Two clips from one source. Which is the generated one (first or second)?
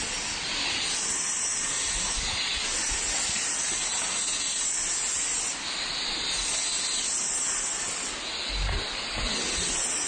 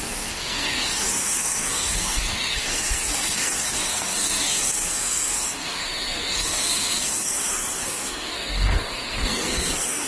second